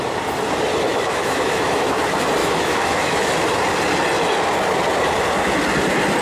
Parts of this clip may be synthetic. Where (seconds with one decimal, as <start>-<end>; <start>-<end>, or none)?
0.9-2.0; 2.4-3.3